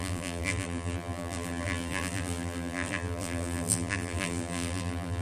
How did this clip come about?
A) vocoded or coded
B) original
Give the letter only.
A